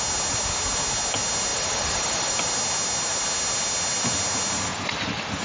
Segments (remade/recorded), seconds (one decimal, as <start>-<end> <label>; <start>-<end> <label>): 0.0-1.5 recorded; 1.5-2.3 remade; 2.3-4.7 recorded; 4.7-5.4 remade